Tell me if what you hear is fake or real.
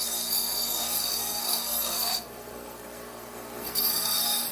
fake